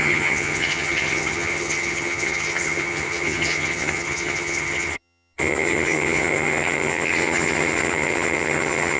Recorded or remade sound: remade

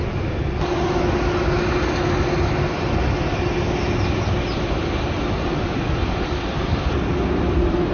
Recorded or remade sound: recorded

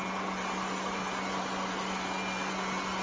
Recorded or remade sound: recorded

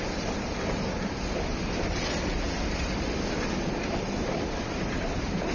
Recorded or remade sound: remade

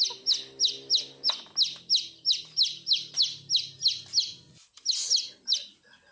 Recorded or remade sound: recorded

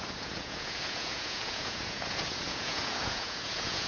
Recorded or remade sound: remade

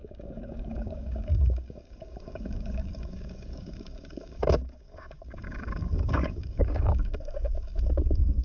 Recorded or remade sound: remade